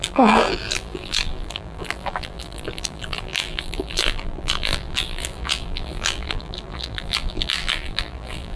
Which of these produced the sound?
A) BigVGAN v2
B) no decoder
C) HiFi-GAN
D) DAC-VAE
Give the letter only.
A